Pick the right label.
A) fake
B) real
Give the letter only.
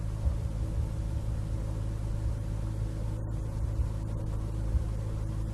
B